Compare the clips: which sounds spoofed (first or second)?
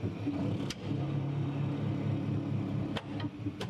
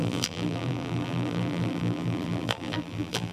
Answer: second